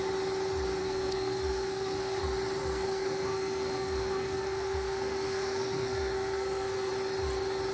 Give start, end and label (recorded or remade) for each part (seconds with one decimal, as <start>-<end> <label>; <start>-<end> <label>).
0.0-0.8 recorded; 0.8-2.2 remade; 2.2-2.6 recorded; 2.6-6.9 remade; 6.9-7.7 recorded